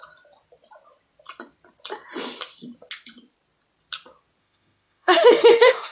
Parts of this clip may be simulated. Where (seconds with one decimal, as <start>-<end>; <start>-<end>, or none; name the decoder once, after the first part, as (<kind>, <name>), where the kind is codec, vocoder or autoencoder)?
4.4-5.9 (autoencoder, DAC-VAE)